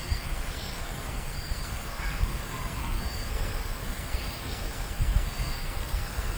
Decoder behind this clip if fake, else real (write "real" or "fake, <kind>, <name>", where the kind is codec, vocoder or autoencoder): fake, codec, SNAC